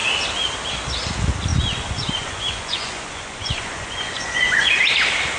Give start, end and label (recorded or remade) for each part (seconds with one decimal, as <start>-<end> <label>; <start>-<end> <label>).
0.0-1.5 recorded; 1.5-4.7 remade; 4.7-5.4 recorded